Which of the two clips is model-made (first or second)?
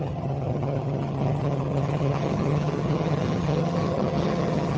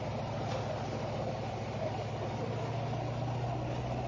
first